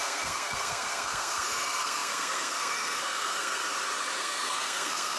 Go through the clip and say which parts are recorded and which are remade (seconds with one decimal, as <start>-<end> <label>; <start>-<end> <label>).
0.0-3.6 remade; 3.6-4.2 recorded; 4.2-5.2 remade